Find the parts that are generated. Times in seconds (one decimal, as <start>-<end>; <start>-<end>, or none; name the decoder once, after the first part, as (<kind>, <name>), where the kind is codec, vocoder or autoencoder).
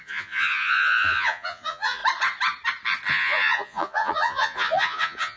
0.0-2.0 (vocoder, Vocos); 3.1-5.4